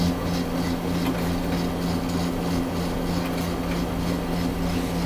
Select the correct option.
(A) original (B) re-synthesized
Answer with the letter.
A